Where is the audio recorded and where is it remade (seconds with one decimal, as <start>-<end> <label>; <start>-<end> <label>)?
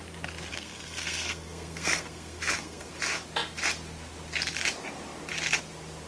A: 0.0-0.5 recorded; 0.5-2.9 remade; 2.9-6.1 recorded